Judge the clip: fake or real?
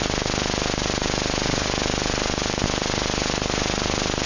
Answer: real